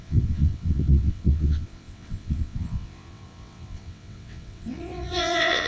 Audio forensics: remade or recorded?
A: remade